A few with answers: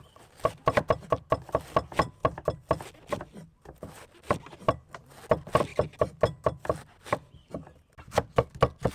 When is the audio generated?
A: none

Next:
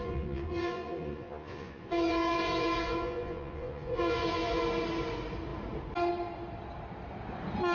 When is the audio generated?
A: 0.0-4.6 (vocoder, Vocos)

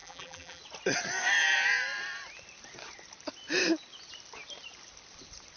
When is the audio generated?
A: 0.0-0.6 (vocoder, BigVGAN v2)

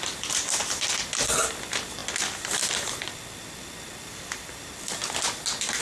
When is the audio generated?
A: none

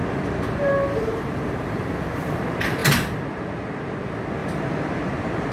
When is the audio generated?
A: 0.0-2.4 (vocoder, BigVGAN v2); 4.4-5.5

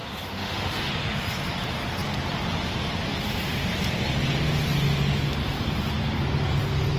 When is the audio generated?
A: 0.0-0.9 (autoencoder, DAC-VAE)